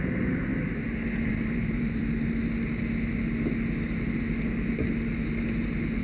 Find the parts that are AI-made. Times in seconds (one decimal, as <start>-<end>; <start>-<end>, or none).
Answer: 0.0-0.5; 1.3-2.0; 5.6-6.0